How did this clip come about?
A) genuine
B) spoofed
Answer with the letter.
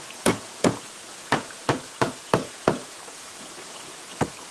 B